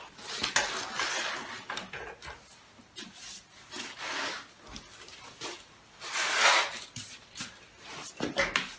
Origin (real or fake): real